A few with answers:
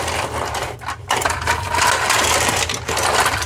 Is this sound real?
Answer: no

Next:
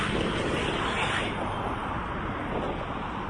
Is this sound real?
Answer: yes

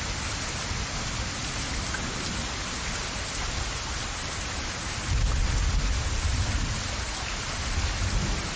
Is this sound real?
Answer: yes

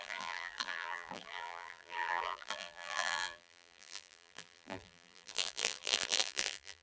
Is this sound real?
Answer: no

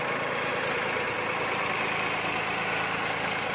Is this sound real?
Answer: yes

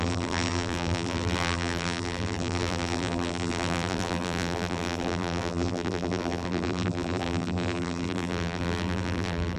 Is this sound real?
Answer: no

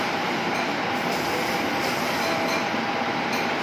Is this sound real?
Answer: yes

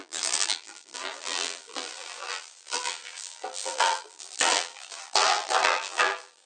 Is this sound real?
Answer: no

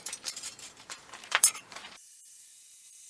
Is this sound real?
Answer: no